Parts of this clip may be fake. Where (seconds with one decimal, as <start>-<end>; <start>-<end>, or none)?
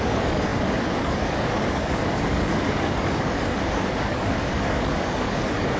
0.0-5.8